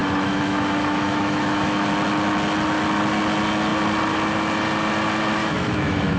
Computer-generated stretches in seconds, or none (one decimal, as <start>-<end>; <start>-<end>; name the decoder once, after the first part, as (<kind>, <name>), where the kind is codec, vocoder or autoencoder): 0.0-1.9 (autoencoder, DAC-VAE); 5.4-6.2